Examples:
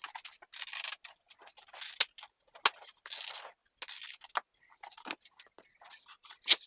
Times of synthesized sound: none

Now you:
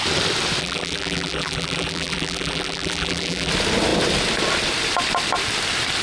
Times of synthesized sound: 0.6-3.5 (vocoder, BigVGAN v2)

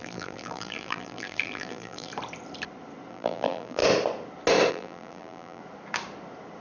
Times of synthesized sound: 0.0-2.1 (vocoder, BigVGAN v2); 3.1-3.8; 4.7-5.6

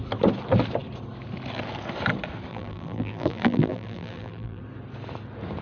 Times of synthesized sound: 2.5-4.6 (vocoder, BigVGAN v2)